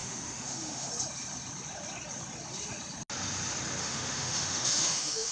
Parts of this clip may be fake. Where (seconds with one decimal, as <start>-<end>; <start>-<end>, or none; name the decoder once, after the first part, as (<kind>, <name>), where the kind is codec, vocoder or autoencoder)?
0.0-0.9 (autoencoder, DAC-VAE); 3.8-5.3